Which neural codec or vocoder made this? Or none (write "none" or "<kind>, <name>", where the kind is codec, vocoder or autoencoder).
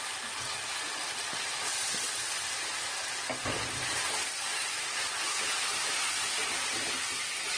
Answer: none